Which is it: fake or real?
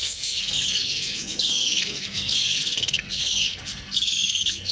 fake